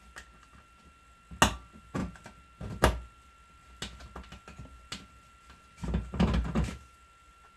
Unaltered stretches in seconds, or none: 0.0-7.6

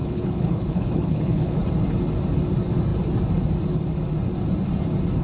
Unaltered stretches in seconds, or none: 1.6-5.2